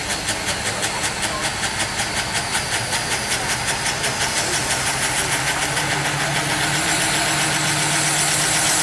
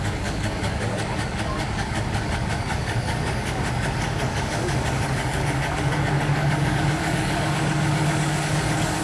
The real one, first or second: first